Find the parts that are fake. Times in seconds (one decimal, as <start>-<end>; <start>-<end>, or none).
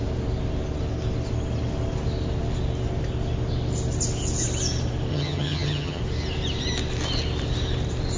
5.1-6.0